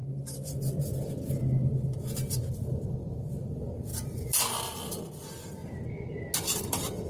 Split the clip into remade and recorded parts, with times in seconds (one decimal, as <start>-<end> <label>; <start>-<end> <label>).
0.0-2.3 recorded; 2.3-5.6 remade; 5.6-6.4 recorded; 6.4-7.1 remade